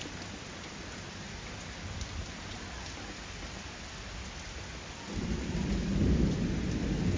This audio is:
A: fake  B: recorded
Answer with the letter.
B